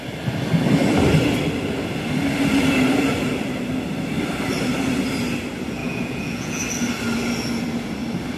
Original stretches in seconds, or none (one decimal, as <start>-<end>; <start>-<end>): 0.0-5.8; 6.6-8.4